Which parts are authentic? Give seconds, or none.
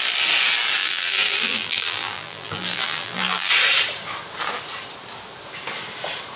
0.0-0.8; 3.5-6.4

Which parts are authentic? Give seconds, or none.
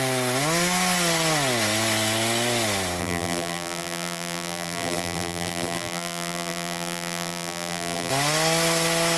0.0-3.0; 8.1-9.2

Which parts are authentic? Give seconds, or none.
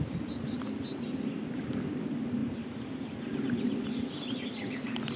0.0-5.2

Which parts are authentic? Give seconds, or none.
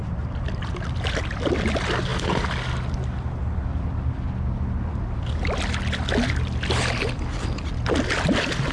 0.0-8.7